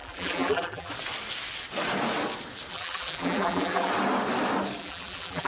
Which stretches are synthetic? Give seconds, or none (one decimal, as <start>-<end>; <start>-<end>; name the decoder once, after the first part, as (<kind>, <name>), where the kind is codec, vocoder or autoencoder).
0.0-0.9 (vocoder, BigVGAN v2); 2.7-3.9; 4.8-5.5